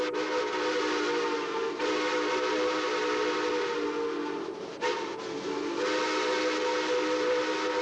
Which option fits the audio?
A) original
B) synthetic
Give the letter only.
A